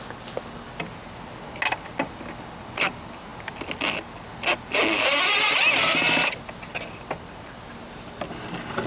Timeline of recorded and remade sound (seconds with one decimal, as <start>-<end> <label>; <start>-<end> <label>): 0.0-8.9 recorded